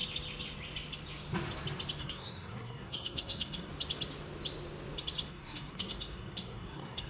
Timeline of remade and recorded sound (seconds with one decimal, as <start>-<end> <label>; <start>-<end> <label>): 0.0-2.0 recorded; 2.0-3.7 remade; 3.7-5.3 recorded; 5.3-7.1 remade